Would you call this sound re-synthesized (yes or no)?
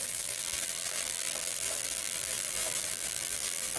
yes